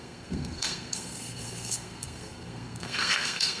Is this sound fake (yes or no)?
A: yes